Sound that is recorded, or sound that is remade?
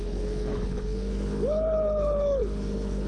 remade